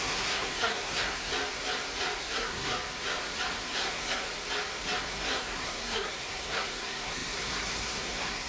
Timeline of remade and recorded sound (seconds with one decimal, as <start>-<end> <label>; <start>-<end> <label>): 0.0-1.3 remade; 1.3-2.2 recorded; 2.2-2.7 remade; 2.7-3.5 recorded; 3.5-4.3 remade; 4.3-5.1 recorded; 5.1-8.5 remade